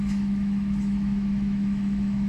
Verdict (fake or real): fake